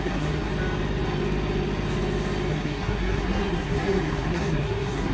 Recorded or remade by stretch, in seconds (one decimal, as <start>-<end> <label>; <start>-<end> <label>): 0.0-0.5 remade; 0.5-2.5 recorded; 2.5-5.1 remade